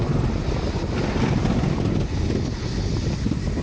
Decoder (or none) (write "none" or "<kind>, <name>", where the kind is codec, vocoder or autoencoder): none